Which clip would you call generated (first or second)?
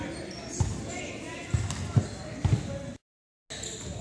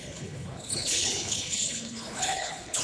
second